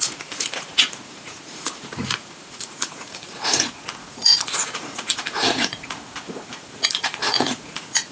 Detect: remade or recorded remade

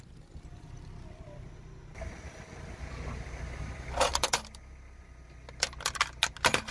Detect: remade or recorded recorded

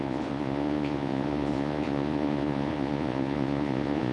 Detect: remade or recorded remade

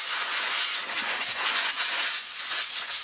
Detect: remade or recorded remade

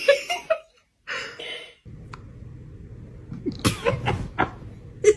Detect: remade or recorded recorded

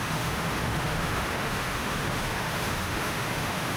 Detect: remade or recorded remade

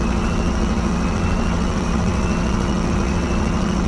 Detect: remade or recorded remade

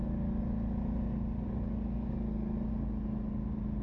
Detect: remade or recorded recorded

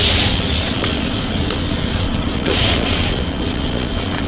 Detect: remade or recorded remade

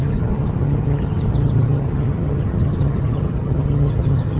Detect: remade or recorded remade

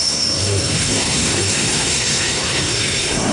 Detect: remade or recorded remade